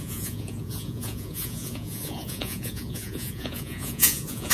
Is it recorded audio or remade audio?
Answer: remade